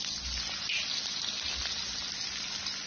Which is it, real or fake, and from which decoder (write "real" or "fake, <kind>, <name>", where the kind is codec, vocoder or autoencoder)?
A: real